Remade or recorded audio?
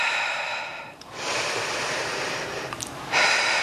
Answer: remade